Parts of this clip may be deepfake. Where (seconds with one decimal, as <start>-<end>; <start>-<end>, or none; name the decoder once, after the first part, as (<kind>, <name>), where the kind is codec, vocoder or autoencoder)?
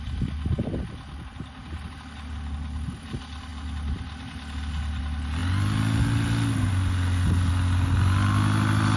none